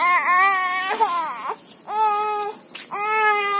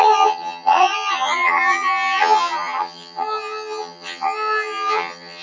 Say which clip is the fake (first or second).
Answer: second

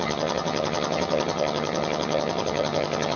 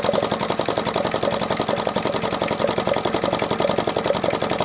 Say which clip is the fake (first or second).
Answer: first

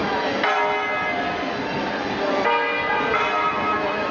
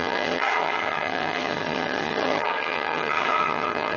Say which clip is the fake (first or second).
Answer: second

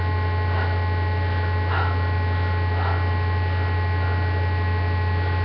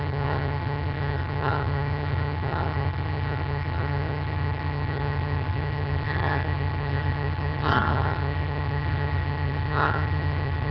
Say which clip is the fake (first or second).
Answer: second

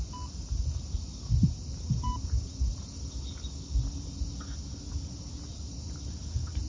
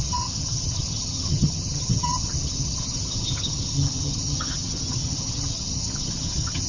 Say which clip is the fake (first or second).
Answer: second